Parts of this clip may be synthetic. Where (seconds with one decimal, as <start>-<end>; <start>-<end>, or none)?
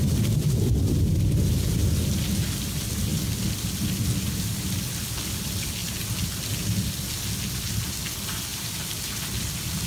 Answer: none